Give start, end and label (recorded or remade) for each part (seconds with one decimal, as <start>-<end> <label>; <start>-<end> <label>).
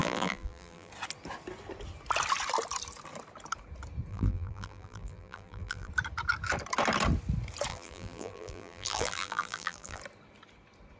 0.0-0.9 remade; 0.9-4.1 recorded; 4.1-5.9 remade; 5.9-7.7 recorded; 7.7-10.0 remade; 10.0-11.0 recorded